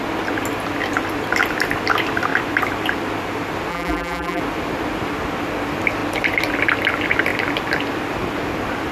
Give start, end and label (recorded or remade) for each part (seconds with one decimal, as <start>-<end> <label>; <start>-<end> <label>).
0.0-3.7 recorded; 3.7-4.4 remade; 4.4-8.9 recorded